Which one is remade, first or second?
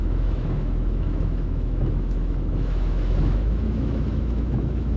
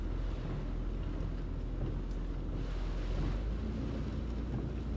first